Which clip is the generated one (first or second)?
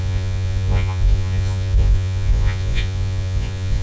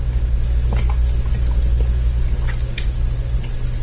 first